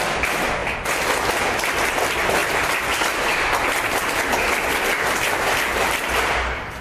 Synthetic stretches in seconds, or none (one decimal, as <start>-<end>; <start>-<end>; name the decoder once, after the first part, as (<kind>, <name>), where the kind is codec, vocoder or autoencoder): 0.0-0.6 (vocoder, BigVGAN v2); 1.4-2.4; 6.0-6.8